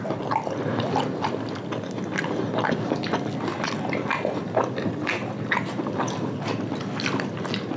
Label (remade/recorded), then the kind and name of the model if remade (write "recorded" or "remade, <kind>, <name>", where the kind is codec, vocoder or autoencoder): recorded